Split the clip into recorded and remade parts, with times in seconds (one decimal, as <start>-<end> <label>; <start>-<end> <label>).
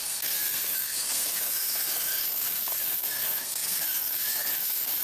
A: 0.0-5.0 remade